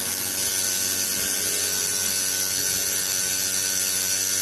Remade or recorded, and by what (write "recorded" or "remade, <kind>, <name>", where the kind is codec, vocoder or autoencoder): recorded